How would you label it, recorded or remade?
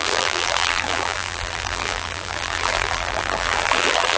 remade